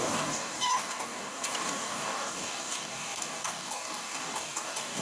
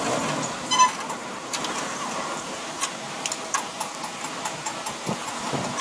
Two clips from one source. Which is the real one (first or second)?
second